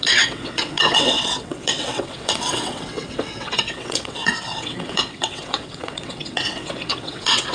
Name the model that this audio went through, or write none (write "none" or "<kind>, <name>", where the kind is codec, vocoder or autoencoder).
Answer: vocoder, WaveNeXt